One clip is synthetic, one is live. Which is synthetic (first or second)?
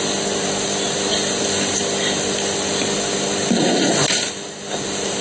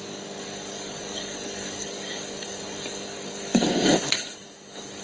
second